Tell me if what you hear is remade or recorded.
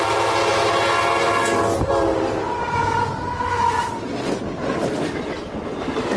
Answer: recorded